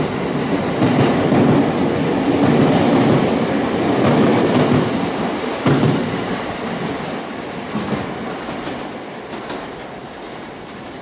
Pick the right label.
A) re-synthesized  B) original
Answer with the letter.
B